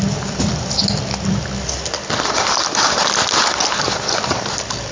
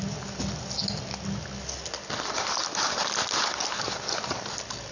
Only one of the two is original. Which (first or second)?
second